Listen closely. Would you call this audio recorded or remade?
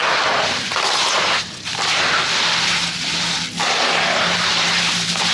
recorded